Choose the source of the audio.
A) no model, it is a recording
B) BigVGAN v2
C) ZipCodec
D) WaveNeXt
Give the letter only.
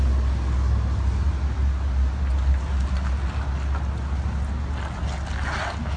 A